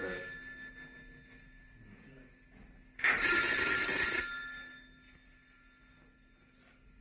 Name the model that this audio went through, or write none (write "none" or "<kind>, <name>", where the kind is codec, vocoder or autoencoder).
none